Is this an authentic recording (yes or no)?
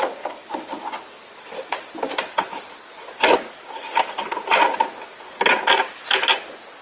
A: yes